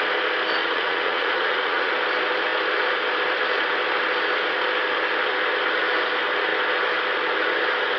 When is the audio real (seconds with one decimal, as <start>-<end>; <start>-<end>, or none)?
0.0-0.6; 1.9-8.0